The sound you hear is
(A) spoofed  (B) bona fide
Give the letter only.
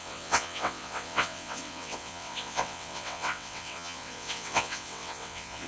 A